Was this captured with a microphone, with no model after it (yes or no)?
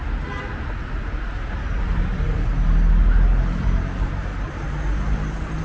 yes